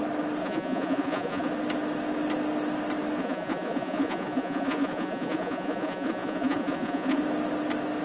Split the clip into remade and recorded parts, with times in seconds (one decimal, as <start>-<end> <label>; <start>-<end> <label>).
0.0-0.4 recorded; 0.4-1.5 remade; 1.5-3.2 recorded; 3.2-7.2 remade; 7.2-8.0 recorded